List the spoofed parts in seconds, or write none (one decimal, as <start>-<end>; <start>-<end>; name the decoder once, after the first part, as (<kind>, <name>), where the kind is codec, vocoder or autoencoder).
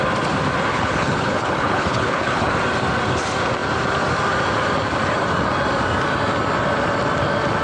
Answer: 0.7-2.5 (codec, HILCodec)